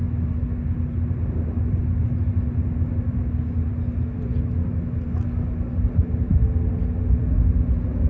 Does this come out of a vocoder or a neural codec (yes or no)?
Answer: no